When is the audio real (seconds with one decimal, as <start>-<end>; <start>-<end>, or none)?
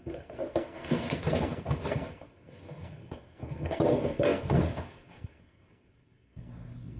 none